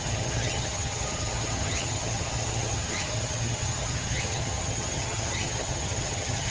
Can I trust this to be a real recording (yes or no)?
no